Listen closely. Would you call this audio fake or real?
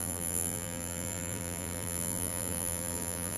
fake